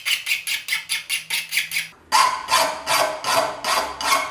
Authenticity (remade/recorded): recorded